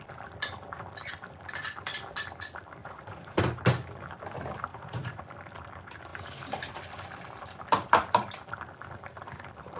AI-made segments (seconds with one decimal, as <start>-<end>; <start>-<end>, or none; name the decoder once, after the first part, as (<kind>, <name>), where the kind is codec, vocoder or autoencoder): 2.8-3.4 (vocoder, Vocos); 4.7-5.2